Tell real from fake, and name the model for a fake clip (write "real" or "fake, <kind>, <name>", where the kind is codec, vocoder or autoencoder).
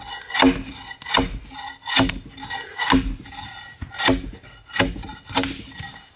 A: real